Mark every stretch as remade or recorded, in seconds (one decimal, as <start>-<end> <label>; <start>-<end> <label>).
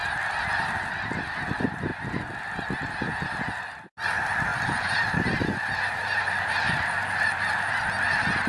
0.0-4.5 recorded; 4.5-7.7 remade; 7.7-8.5 recorded